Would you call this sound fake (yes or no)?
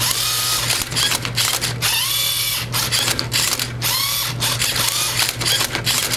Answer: no